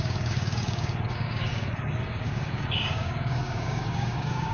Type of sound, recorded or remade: remade